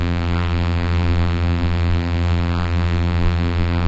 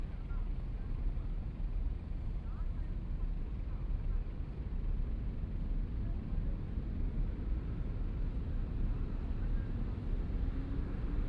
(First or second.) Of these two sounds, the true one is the second